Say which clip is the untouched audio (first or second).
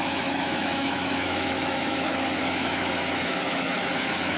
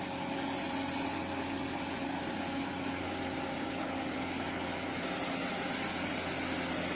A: second